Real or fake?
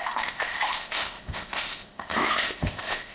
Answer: fake